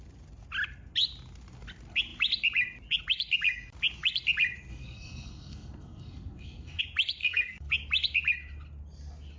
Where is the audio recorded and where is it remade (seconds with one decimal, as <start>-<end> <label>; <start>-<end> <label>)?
0.0-4.7 recorded; 4.7-6.8 remade; 6.8-7.2 recorded; 7.2-7.7 remade; 7.7-9.4 recorded